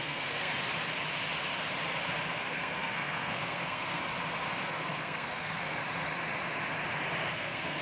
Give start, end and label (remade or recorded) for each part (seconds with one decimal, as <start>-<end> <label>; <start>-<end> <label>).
0.0-0.5 remade; 0.5-2.3 recorded; 2.3-4.0 remade; 4.0-4.7 recorded; 4.7-5.8 remade; 5.8-7.3 recorded; 7.3-7.8 remade